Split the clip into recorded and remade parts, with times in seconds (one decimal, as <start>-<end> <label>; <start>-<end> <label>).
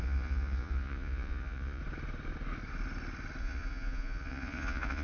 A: 0.0-1.8 remade; 1.8-3.4 recorded; 3.4-5.0 remade